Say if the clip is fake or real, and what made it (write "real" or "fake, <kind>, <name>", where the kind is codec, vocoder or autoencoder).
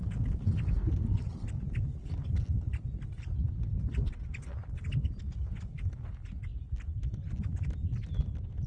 real